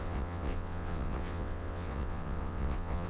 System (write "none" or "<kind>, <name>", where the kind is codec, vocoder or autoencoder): vocoder, WaveNeXt